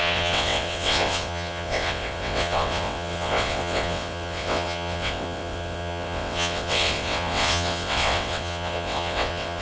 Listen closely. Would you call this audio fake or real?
fake